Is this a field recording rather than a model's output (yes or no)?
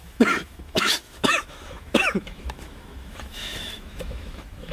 no